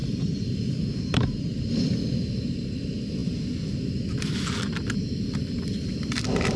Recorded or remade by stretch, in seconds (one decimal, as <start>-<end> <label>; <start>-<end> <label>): 0.0-1.9 remade; 1.9-6.6 recorded